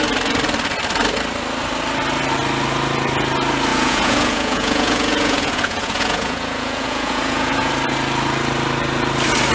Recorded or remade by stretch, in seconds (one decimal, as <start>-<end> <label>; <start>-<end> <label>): 0.0-3.7 recorded; 3.7-7.7 remade; 7.7-9.5 recorded